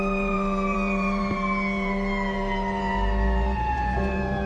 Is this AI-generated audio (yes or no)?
yes